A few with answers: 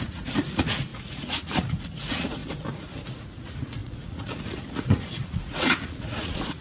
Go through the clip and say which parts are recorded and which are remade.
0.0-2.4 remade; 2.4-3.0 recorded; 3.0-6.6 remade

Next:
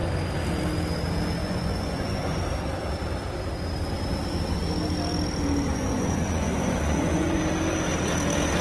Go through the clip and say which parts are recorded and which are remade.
0.0-1.4 recorded; 1.4-2.4 remade; 2.4-5.7 recorded; 5.7-7.4 remade; 7.4-8.6 recorded

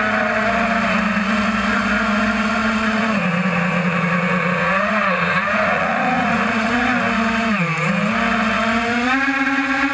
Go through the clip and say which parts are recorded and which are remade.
0.0-2.6 recorded; 2.6-6.8 remade; 6.8-9.9 recorded

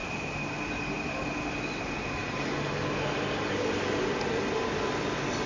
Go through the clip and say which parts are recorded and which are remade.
0.0-5.5 recorded

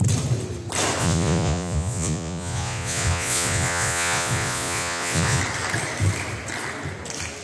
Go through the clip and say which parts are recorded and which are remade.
0.0-1.0 recorded; 1.0-5.4 remade; 5.4-7.4 recorded

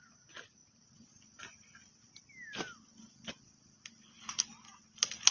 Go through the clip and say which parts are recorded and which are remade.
0.0-5.3 recorded